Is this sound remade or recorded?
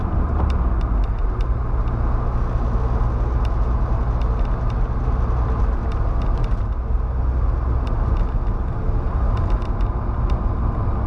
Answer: recorded